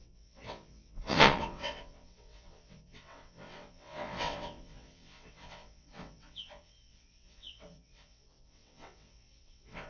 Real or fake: fake